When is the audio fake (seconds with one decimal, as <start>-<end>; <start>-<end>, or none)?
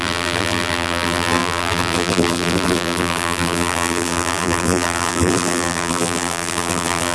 0.0-7.1